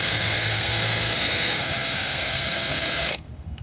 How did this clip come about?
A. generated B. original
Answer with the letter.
A